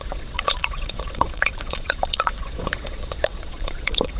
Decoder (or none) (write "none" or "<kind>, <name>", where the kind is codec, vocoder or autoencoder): vocoder, Vocos